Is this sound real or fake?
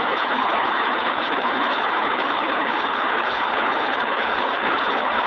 fake